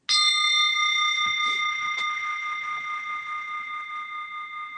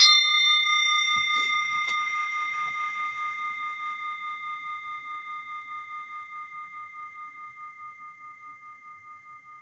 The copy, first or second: second